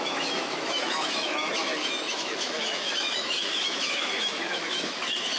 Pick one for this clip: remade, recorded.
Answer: remade